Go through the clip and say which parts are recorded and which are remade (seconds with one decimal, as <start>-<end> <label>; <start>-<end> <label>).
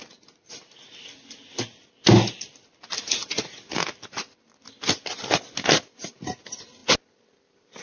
0.0-7.8 recorded